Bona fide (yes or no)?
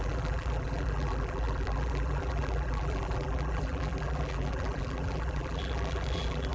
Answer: no